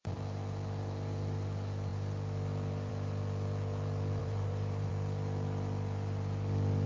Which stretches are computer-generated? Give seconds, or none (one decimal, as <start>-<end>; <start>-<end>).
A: 4.2-4.9